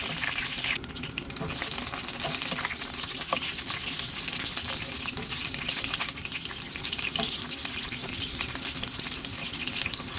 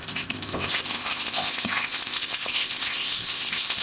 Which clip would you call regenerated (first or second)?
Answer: second